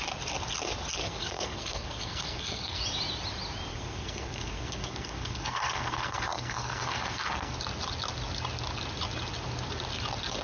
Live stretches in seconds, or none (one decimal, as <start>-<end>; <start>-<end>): 0.0-1.0; 2.8-3.7; 7.5-10.4